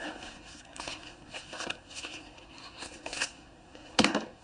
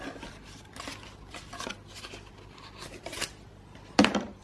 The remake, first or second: first